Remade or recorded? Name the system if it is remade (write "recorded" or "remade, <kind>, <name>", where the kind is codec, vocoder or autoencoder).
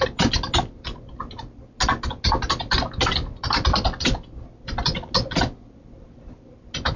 recorded